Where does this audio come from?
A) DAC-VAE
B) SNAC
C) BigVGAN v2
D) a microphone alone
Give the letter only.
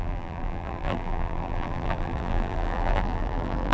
C